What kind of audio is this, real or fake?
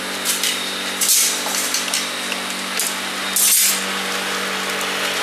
real